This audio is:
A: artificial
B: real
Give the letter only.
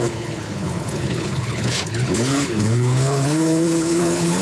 A